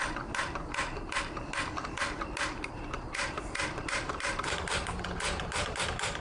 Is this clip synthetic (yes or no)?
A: yes